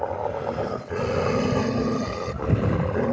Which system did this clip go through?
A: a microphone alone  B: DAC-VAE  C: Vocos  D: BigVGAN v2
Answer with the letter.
A